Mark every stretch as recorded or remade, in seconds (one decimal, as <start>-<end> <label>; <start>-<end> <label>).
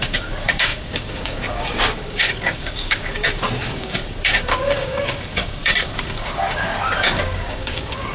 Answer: 0.0-8.1 remade